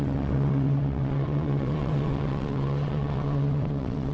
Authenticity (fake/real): fake